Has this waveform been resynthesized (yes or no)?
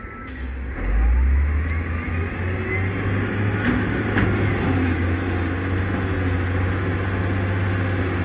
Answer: no